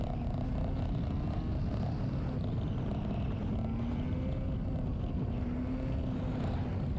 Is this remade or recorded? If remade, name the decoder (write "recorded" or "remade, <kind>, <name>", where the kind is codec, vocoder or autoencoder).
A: recorded